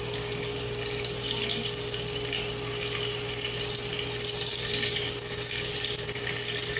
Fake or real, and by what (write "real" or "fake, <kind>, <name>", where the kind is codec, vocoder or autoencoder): real